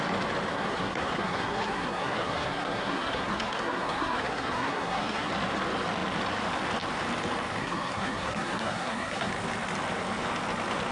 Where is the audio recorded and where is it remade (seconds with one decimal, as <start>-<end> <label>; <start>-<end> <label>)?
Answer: 0.0-0.5 recorded; 0.5-5.3 remade; 5.3-7.6 recorded; 7.6-9.3 remade; 9.3-10.9 recorded